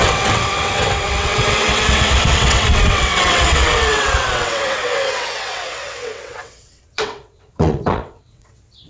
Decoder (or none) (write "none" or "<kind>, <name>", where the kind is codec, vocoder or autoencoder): vocoder, WaveNeXt